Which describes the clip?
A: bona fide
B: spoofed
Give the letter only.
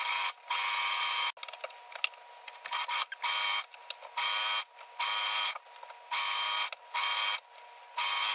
A